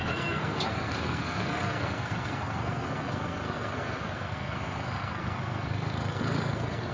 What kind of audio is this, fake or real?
fake